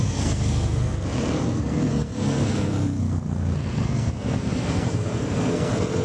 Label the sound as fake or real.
fake